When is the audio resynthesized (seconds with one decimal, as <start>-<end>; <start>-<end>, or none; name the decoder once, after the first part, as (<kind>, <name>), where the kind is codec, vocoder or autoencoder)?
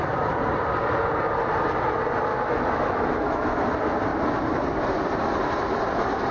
2.3-3.6 (autoencoder, DAC-VAE)